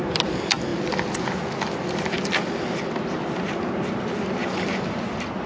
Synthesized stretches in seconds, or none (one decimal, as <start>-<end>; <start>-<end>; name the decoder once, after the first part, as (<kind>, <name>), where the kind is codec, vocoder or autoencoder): none